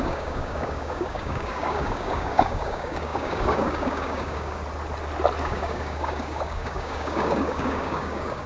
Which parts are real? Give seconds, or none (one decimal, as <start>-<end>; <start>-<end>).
4.6-5.4